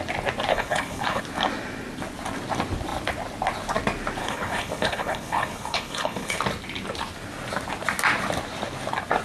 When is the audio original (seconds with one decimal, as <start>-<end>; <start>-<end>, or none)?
0.0-0.5; 1.2-4.2; 6.4-9.2